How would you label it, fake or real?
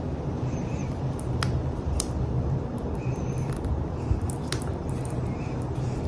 fake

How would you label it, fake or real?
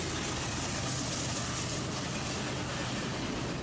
real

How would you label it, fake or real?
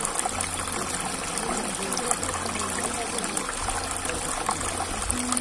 real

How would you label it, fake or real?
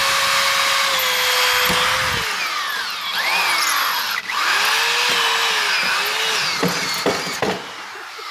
real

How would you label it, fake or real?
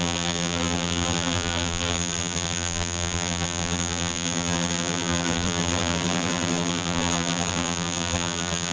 fake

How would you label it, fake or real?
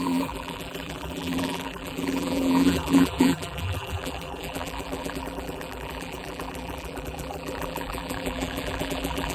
fake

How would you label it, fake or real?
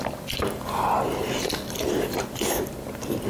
fake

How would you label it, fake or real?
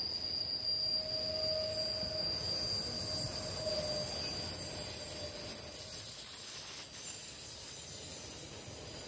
real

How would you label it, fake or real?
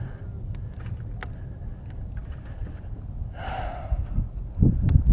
real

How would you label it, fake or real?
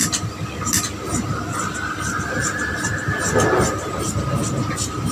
real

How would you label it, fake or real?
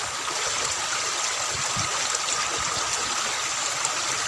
real